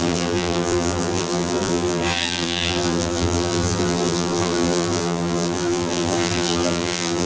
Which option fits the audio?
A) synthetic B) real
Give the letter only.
A